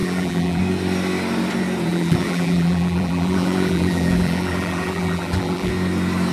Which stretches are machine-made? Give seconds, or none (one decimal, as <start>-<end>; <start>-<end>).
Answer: 0.0-0.6; 1.9-5.7